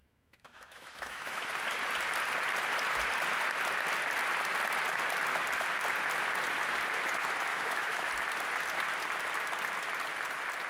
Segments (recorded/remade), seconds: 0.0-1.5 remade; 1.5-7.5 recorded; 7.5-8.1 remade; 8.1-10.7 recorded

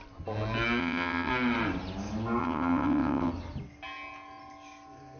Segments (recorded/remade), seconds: 0.0-0.8 recorded; 0.8-1.3 remade; 1.3-2.4 recorded; 2.4-3.3 remade; 3.3-5.2 recorded

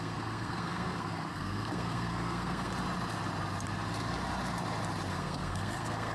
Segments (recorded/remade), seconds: 0.0-2.7 remade; 2.7-5.1 recorded; 5.1-6.1 remade